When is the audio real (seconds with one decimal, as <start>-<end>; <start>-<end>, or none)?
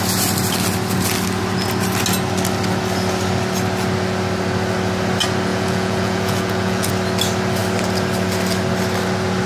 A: 0.0-5.5; 6.9-9.5